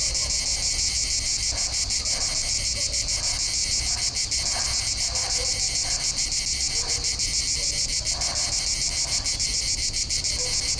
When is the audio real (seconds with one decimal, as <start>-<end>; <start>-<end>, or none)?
0.0-10.8